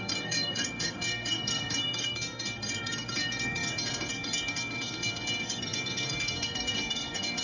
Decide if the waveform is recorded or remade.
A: remade